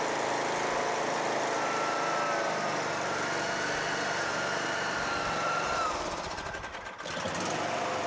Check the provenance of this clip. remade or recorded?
recorded